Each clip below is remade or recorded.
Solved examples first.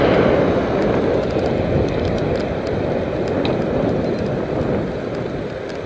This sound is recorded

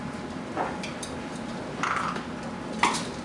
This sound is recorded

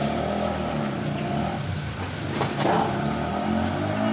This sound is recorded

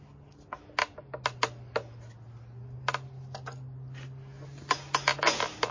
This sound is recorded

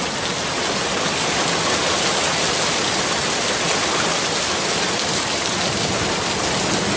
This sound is recorded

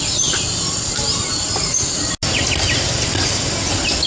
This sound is recorded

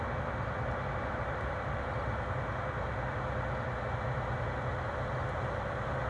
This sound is recorded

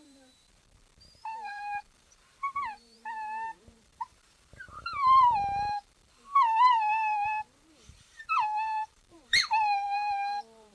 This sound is remade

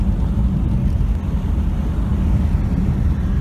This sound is recorded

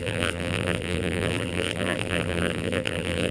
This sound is remade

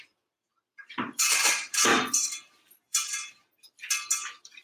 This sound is remade